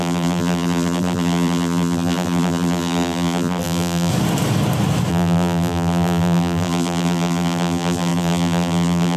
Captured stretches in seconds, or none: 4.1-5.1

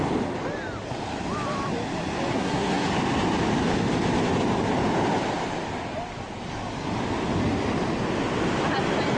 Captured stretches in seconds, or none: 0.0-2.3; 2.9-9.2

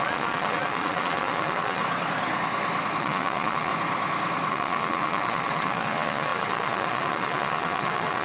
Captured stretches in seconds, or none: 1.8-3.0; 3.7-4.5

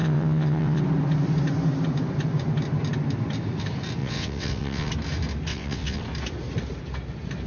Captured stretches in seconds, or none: 0.8-4.0; 4.9-5.5; 6.0-7.5